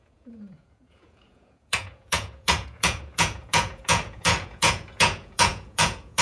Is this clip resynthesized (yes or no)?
yes